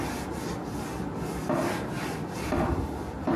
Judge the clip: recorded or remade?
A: remade